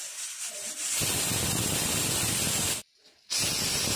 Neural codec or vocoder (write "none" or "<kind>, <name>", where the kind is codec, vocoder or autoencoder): none